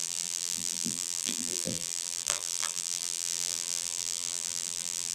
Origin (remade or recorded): remade